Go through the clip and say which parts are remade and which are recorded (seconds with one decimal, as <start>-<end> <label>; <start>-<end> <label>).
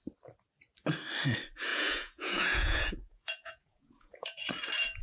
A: 0.0-1.7 recorded; 1.7-4.5 remade; 4.5-5.0 recorded